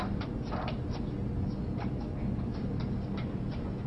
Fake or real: real